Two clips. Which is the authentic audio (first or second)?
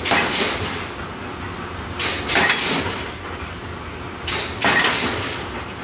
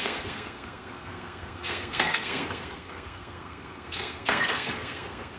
first